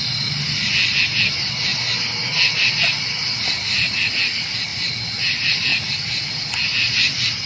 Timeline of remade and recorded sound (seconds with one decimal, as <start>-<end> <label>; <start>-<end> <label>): 0.0-7.5 recorded